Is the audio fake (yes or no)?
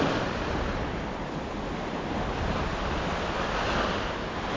no